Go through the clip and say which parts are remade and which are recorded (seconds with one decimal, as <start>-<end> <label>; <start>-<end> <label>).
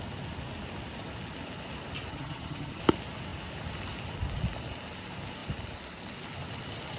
0.0-2.1 recorded; 2.1-2.8 remade; 2.8-7.0 recorded